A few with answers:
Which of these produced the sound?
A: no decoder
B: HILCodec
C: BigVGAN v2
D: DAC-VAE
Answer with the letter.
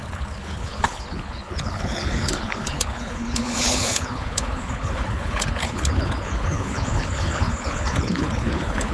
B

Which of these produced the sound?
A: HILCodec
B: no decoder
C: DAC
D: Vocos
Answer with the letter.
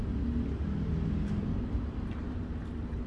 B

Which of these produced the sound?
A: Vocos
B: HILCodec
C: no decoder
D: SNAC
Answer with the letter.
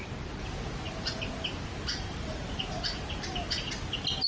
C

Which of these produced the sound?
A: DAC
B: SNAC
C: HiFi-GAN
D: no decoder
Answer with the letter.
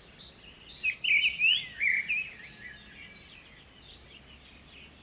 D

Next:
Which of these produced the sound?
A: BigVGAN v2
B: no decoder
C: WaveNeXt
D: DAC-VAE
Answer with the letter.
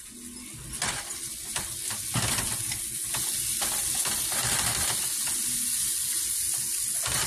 B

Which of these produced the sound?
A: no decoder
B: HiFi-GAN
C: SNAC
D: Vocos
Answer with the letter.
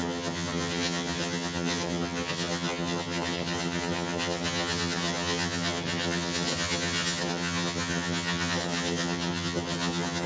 B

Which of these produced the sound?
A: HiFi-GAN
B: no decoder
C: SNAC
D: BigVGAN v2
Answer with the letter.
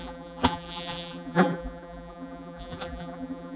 D